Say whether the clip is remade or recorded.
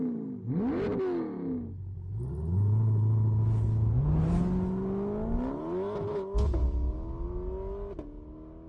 recorded